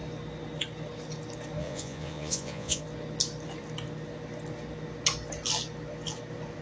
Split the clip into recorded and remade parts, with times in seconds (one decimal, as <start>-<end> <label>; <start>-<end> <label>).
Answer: 0.0-1.6 recorded; 1.6-2.8 remade; 2.8-6.6 recorded